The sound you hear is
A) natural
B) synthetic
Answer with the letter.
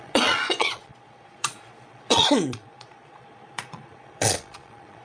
B